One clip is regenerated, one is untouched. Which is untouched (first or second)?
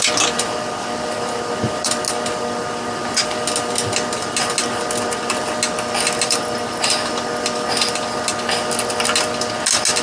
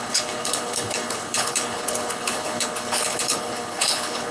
first